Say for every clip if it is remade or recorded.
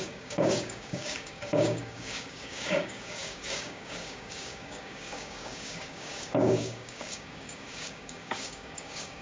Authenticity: remade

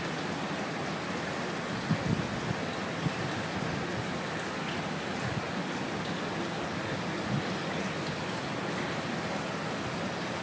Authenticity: recorded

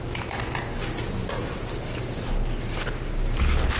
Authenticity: recorded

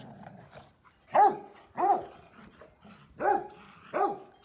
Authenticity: recorded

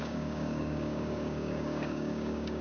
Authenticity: remade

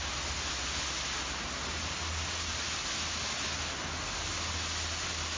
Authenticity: recorded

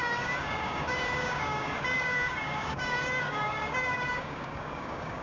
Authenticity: remade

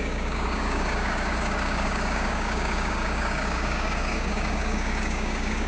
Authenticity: remade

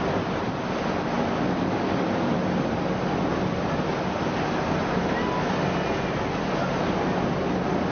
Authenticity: recorded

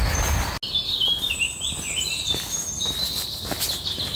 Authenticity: recorded